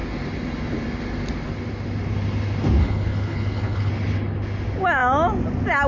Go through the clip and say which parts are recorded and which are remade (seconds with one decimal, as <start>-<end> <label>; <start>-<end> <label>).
0.0-2.8 recorded; 2.8-3.9 remade; 3.9-5.9 recorded